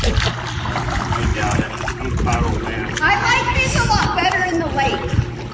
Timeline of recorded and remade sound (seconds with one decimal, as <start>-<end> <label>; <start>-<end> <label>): 0.0-5.5 recorded